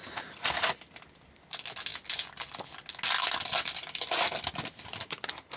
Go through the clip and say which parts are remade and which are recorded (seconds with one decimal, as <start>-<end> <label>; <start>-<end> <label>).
0.0-5.6 recorded